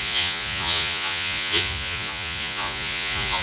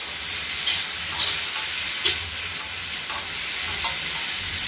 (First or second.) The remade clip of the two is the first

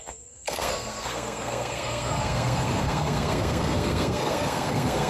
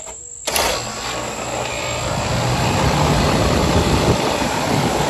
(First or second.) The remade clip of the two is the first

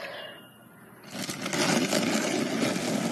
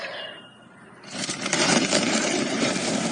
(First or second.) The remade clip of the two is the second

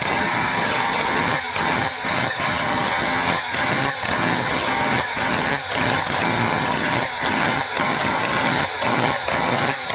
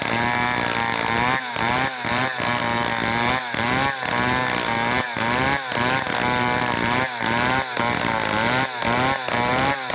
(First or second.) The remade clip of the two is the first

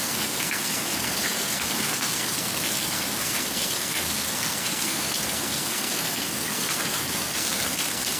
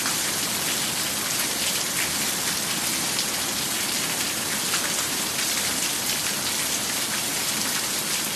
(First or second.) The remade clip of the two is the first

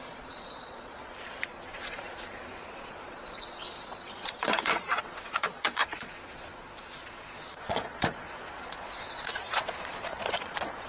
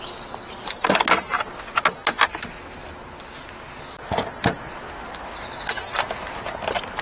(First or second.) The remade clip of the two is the first